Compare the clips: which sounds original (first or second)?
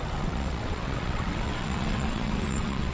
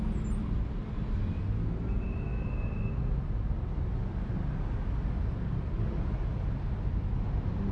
second